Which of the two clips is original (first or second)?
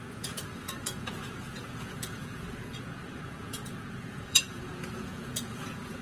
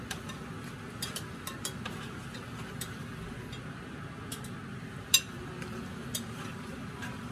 second